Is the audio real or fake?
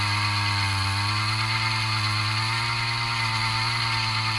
real